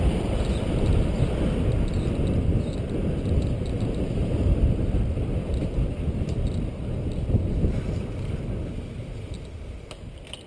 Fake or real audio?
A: real